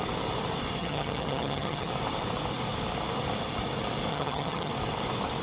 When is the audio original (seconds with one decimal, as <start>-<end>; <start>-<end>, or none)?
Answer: 0.0-0.8; 1.9-4.1; 4.7-5.4